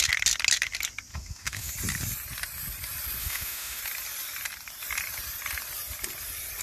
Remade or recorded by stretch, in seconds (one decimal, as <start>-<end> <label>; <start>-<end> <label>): 0.0-1.1 recorded; 1.1-1.7 remade; 1.7-3.2 recorded; 3.2-3.8 remade; 3.8-6.6 recorded